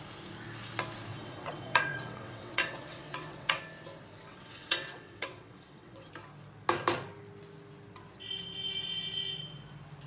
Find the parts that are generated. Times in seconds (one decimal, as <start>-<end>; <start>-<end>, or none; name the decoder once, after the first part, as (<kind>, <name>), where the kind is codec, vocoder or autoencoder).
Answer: 1.1-3.6 (vocoder, WaveNeXt); 4.3-6.1